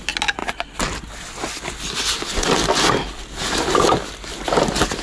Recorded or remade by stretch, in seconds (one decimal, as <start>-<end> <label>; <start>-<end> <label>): 0.0-5.0 recorded